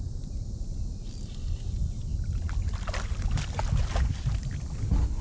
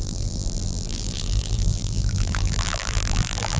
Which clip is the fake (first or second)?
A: second